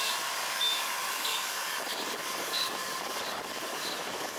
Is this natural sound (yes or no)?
no